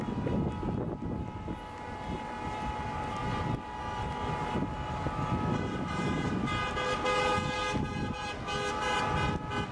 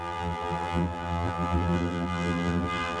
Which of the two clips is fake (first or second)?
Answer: second